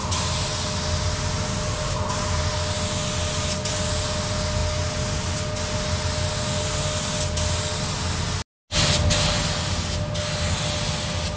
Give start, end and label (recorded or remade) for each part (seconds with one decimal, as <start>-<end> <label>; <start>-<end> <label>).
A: 0.0-11.4 recorded

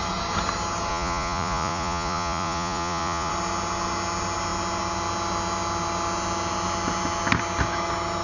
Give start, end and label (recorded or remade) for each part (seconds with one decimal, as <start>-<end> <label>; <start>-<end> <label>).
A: 0.0-0.9 recorded; 0.9-3.3 remade; 3.3-8.2 recorded

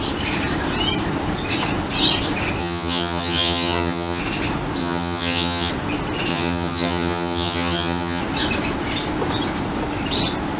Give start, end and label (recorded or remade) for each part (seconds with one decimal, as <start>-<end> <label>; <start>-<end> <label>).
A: 0.0-2.6 recorded; 2.6-4.2 remade; 4.2-4.8 recorded; 4.8-5.7 remade; 5.7-6.3 recorded; 6.3-8.2 remade; 8.2-10.6 recorded

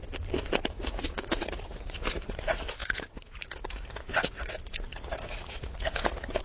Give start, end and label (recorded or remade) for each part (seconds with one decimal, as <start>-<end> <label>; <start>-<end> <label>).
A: 0.0-0.7 recorded; 0.7-6.4 remade

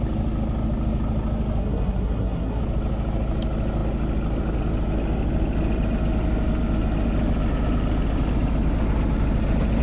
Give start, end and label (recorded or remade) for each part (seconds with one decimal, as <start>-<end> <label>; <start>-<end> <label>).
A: 0.0-1.6 recorded; 1.6-2.6 remade; 2.6-9.8 recorded

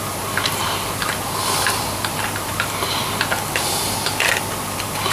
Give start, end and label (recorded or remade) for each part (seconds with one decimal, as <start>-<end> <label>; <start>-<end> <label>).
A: 0.0-5.1 recorded